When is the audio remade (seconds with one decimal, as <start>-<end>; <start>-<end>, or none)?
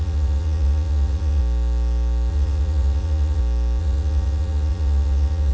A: 0.0-1.4; 2.3-3.4; 3.8-5.5